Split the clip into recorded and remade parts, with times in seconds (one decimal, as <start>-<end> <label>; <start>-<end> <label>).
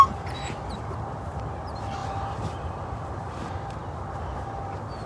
0.0-2.0 recorded; 2.0-3.4 remade; 3.4-5.1 recorded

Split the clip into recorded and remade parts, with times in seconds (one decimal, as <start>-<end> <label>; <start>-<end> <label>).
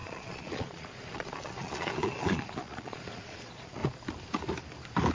0.0-3.8 remade; 3.8-5.1 recorded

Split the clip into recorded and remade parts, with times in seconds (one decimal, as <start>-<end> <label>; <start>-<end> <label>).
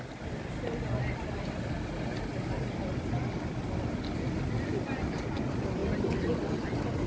0.0-7.1 recorded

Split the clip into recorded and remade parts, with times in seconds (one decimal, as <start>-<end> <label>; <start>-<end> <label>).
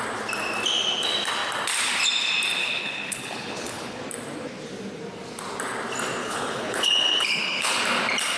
0.0-2.6 recorded; 2.6-4.0 remade; 4.0-6.2 recorded; 6.2-7.8 remade; 7.8-8.4 recorded